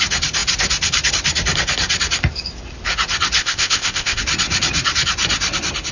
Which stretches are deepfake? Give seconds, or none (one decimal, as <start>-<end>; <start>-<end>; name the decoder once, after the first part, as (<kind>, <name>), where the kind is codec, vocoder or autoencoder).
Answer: 3.4-4.2 (codec, ZipCodec)